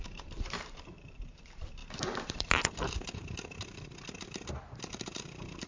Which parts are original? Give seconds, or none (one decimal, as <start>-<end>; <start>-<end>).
1.8-4.9